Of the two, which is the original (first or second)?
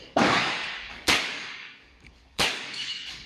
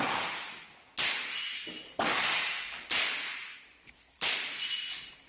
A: second